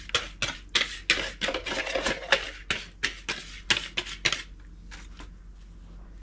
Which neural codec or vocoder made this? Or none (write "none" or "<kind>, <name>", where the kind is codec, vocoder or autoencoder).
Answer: none